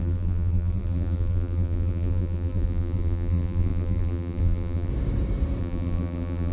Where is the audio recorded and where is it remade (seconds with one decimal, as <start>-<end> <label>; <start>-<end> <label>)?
0.0-4.9 remade; 4.9-5.6 recorded; 5.6-6.5 remade